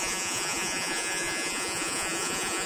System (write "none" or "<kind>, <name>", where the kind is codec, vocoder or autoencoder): vocoder, Vocos